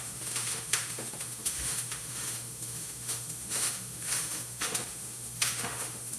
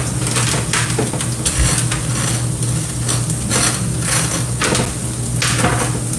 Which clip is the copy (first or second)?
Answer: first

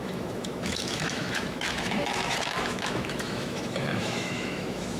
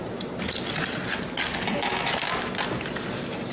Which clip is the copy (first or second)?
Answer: first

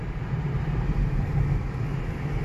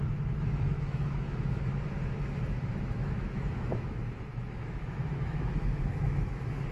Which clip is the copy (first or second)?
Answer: second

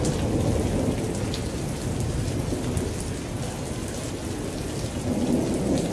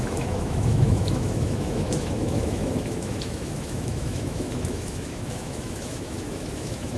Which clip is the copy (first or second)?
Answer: second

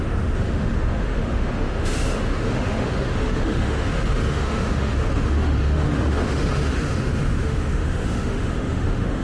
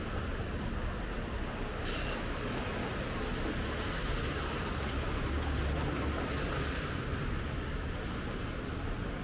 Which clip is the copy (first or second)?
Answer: first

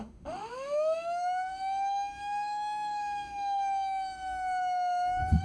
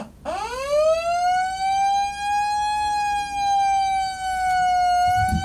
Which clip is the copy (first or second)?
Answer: first